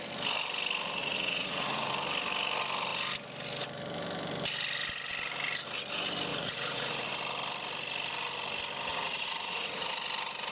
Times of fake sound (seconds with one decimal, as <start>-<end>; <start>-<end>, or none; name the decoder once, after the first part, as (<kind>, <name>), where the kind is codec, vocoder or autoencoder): 1.0-1.9 (vocoder, Vocos); 6.3-7.1; 8.9-9.9